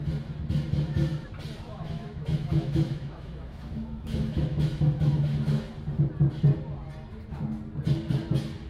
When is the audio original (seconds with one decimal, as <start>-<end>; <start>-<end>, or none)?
0.0-1.7; 5.7-8.7